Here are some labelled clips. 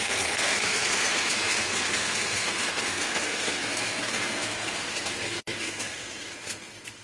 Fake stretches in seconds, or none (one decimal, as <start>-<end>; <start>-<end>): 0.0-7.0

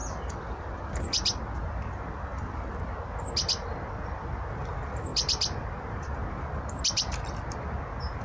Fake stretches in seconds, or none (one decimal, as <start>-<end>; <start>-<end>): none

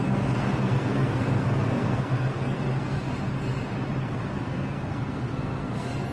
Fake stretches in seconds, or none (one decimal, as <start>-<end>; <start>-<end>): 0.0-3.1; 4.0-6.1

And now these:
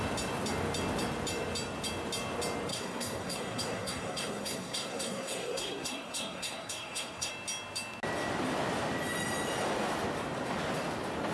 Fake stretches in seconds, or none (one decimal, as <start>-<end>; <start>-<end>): 2.7-7.3

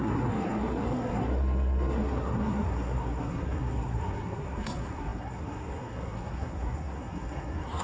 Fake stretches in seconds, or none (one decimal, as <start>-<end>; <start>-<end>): 0.0-7.8

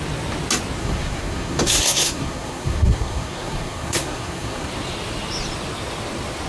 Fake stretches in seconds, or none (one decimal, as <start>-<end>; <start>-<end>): 0.8-4.7